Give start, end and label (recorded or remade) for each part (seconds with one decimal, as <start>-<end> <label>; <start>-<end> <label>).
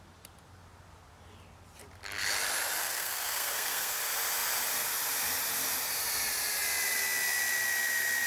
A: 0.0-2.8 recorded; 2.8-4.0 remade; 4.0-8.3 recorded